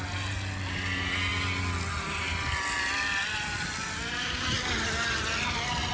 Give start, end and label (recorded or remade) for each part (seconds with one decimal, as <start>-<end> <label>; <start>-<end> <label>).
0.0-5.9 recorded